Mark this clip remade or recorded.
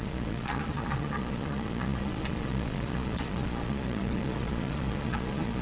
remade